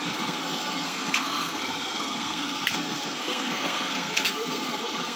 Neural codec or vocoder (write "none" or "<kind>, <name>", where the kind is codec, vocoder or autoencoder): codec, SNAC